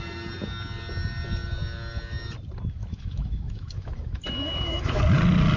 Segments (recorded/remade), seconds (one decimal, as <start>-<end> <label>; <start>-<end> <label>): 0.0-2.8 recorded; 2.8-5.0 remade; 5.0-5.6 recorded

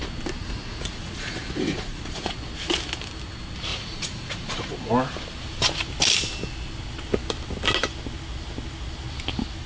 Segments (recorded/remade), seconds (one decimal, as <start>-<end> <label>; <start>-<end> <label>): 0.0-0.4 recorded; 0.4-2.4 remade; 2.4-3.7 recorded; 3.7-4.9 remade; 4.9-9.7 recorded